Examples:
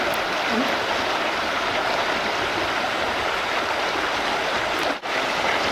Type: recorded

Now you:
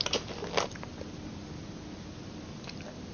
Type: recorded